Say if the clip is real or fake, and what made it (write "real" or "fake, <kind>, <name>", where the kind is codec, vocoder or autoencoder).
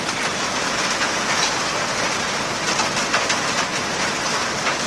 real